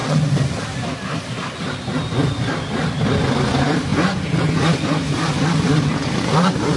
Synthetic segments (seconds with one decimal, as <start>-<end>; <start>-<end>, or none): 0.6-1.4; 2.8-6.8